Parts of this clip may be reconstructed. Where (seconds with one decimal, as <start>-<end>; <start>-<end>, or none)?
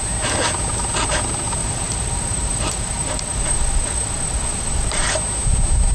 1.6-5.1